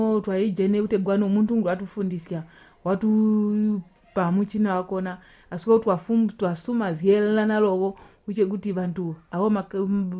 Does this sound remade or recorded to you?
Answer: recorded